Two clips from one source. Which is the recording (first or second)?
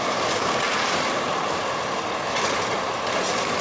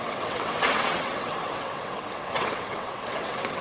first